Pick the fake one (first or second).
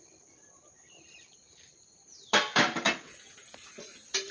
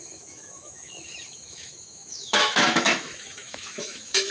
second